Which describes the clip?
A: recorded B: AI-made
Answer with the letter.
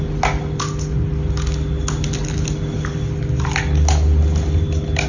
A